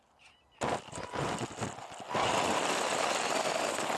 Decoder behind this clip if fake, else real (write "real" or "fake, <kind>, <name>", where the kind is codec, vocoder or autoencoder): real